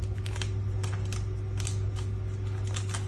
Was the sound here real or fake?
real